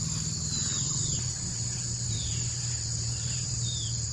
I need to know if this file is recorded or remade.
remade